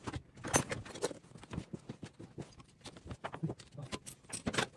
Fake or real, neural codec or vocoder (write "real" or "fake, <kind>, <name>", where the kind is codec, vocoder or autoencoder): real